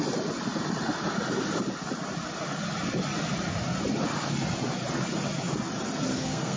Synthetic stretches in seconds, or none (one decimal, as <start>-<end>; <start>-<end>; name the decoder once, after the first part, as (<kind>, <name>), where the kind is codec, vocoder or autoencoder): 6.1-6.6 (codec, SNAC)